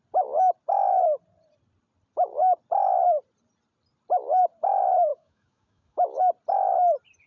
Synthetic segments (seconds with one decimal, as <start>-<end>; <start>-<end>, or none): 5.1-6.2